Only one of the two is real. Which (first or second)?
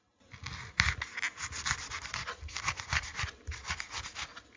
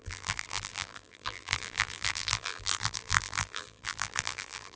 first